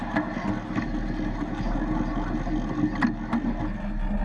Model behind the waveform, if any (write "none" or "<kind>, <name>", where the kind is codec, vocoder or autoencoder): none